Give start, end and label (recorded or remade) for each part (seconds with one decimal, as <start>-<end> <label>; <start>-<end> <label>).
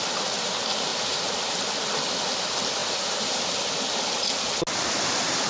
0.0-5.5 recorded